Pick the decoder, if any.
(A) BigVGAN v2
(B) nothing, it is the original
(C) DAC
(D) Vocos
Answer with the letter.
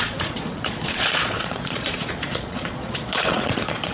D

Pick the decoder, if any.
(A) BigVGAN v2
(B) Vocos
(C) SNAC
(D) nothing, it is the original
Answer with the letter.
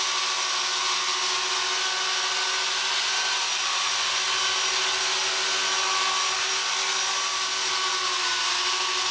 D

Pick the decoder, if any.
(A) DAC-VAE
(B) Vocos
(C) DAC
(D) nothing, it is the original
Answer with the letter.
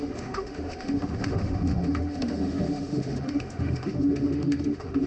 A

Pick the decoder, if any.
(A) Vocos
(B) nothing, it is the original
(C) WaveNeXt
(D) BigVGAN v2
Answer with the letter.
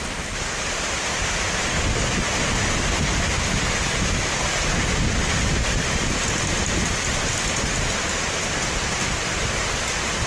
B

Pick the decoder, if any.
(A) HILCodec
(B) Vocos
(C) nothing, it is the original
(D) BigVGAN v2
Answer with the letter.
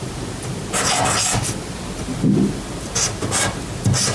C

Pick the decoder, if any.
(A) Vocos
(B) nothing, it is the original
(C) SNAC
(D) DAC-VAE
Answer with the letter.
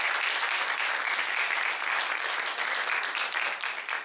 B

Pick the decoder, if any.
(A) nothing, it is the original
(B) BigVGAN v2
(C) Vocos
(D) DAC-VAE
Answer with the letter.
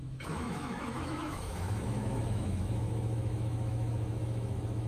D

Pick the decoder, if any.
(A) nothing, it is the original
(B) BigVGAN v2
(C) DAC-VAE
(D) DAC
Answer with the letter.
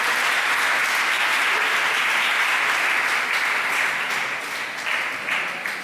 A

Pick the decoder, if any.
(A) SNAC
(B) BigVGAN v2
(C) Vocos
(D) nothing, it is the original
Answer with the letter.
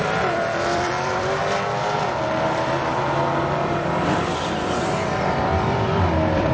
B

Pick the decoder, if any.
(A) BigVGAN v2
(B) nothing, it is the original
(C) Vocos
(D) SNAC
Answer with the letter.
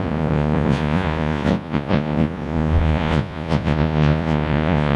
C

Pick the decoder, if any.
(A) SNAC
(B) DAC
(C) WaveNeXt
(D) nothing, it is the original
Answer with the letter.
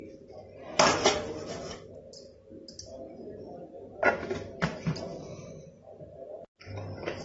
D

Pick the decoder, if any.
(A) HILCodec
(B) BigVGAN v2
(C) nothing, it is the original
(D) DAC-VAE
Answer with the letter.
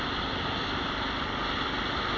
C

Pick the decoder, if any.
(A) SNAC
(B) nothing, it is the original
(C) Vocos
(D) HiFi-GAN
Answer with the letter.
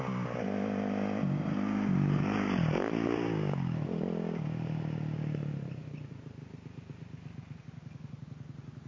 B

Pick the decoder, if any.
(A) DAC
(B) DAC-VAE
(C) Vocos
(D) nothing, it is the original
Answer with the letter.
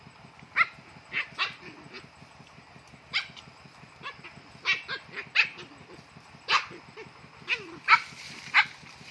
D